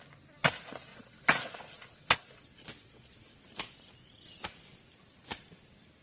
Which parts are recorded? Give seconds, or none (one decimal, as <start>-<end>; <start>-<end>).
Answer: 0.0-0.9; 3.3-6.0